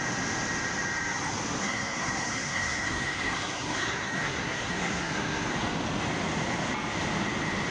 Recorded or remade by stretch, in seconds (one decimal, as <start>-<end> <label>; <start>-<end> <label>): 0.0-1.6 recorded; 1.6-5.5 remade; 5.5-7.7 recorded